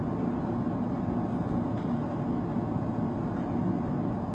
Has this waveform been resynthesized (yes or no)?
no